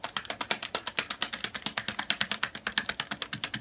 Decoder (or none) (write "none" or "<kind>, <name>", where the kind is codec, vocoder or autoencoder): none